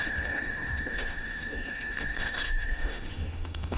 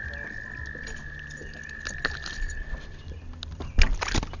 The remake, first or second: first